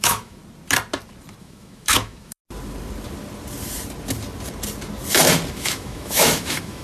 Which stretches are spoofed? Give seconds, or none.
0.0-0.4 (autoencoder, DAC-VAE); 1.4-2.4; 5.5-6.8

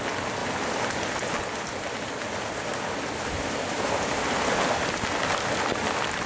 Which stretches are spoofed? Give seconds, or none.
none

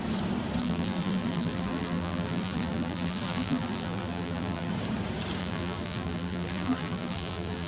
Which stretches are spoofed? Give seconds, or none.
0.6-4.7 (vocoder, BigVGAN v2); 5.4-7.7

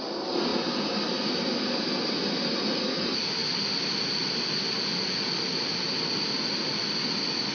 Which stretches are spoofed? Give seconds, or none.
none